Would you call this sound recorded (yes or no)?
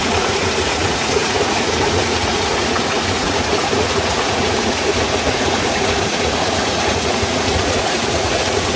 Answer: no